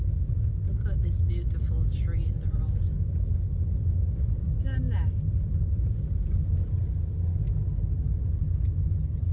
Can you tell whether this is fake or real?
real